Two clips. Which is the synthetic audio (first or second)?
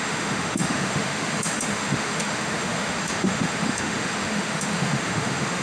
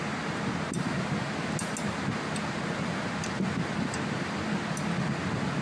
first